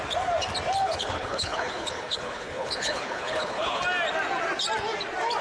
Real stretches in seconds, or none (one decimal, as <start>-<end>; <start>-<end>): 0.0-0.8; 3.8-5.4